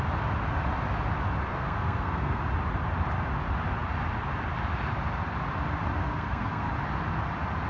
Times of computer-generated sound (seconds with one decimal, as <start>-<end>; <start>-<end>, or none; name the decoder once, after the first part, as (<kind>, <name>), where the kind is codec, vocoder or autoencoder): 1.5-2.4 (codec, SNAC); 6.0-6.7